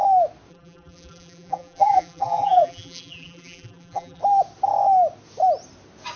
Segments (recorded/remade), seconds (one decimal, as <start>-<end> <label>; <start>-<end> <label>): 0.0-0.5 recorded; 0.5-4.2 remade; 4.2-6.2 recorded